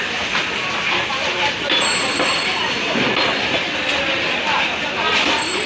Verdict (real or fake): real